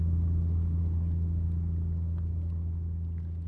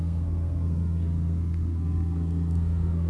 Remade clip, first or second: second